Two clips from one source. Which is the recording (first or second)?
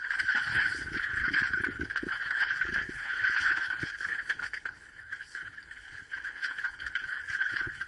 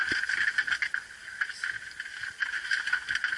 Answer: second